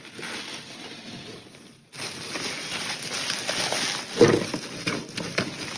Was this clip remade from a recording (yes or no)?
no